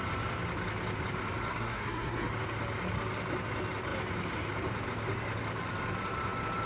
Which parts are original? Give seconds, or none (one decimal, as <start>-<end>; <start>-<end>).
0.0-1.5; 2.3-6.7